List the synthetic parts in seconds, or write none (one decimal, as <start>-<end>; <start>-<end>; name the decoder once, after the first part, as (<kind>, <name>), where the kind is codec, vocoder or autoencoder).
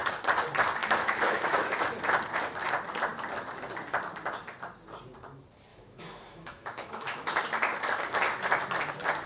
0.8-1.7 (autoencoder, DAC-VAE); 5.7-7.4